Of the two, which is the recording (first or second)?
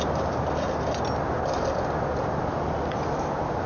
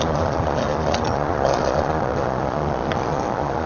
first